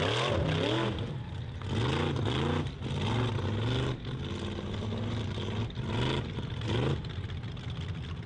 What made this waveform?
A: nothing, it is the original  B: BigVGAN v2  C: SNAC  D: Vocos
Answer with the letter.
A